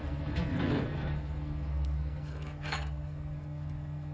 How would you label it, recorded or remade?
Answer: remade